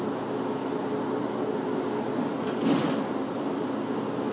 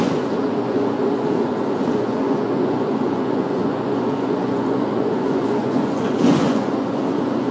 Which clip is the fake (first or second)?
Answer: second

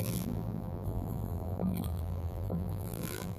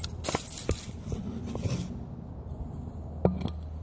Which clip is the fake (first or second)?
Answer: first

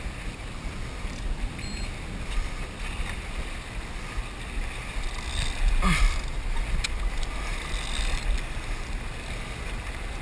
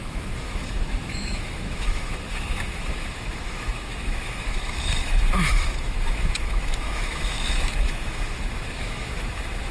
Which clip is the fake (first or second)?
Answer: second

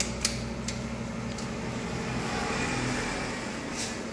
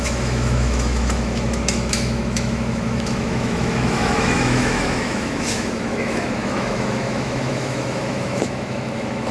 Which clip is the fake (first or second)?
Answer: second